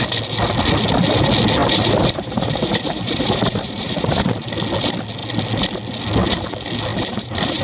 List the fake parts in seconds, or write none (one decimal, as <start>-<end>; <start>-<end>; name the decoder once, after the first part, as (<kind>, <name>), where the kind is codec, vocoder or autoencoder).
1.6-4.5 (vocoder, BigVGAN v2); 6.9-7.6